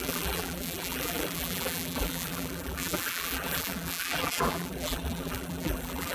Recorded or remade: remade